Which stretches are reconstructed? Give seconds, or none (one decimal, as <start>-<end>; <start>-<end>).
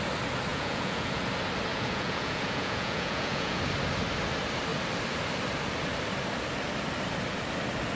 0.5-1.2; 1.7-3.6